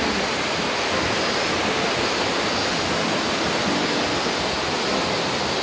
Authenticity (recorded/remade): recorded